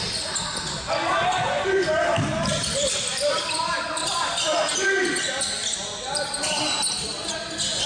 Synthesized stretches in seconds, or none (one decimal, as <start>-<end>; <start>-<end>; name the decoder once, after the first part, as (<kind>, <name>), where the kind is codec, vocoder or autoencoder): none